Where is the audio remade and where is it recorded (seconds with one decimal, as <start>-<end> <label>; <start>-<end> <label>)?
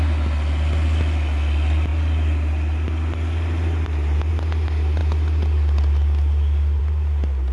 0.0-7.5 recorded